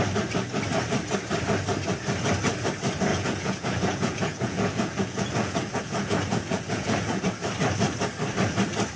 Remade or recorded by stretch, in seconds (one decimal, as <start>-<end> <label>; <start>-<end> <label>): 0.0-3.1 recorded; 3.1-7.2 remade; 7.2-9.0 recorded